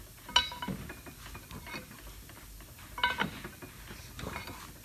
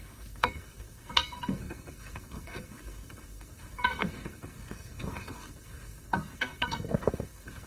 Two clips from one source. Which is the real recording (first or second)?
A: first